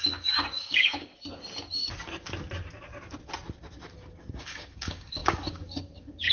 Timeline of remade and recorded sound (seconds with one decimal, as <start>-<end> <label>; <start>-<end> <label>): 0.0-1.1 remade; 1.1-4.3 recorded; 4.3-6.3 remade